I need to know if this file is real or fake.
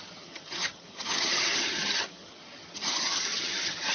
fake